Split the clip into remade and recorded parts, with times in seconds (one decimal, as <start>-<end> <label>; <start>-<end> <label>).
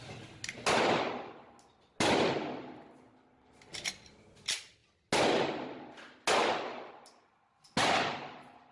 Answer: 0.0-8.7 recorded